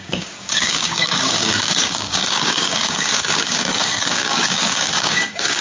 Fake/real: fake